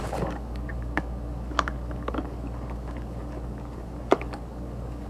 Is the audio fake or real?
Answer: fake